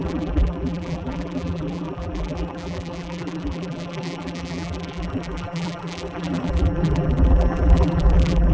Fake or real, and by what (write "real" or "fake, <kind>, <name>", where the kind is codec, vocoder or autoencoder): fake, vocoder, BigVGAN v2